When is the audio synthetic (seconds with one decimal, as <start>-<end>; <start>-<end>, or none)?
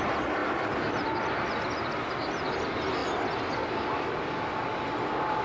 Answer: none